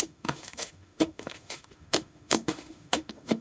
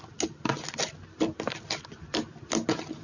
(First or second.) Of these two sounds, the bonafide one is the second